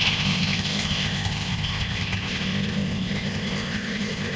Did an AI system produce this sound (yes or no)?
yes